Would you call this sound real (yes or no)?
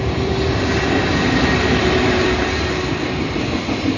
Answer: yes